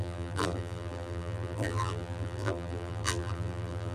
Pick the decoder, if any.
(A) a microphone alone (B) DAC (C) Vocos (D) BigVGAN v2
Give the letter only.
D